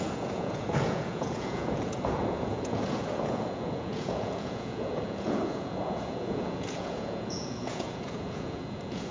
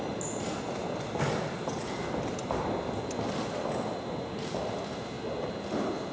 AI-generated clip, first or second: first